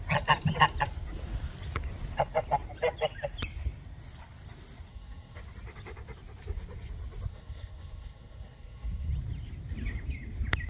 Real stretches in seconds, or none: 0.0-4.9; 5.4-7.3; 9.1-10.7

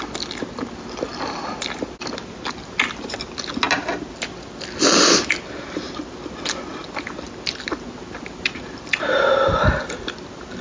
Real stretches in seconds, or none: 0.0-10.6

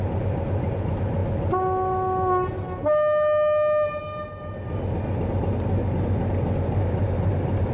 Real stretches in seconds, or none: 0.0-7.7

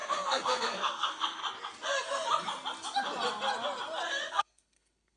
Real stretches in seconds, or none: 1.4-4.3

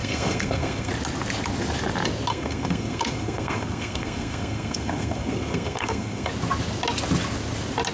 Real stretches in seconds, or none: 0.9-2.3; 6.3-7.9

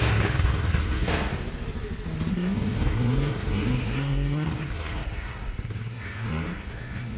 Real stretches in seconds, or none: 1.3-2.3

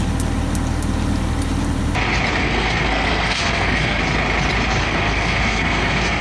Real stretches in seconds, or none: 0.0-2.4; 4.0-4.8